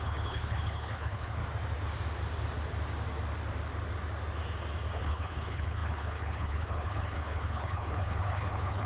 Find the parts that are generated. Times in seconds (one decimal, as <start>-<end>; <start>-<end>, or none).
0.0-1.4; 5.0-8.9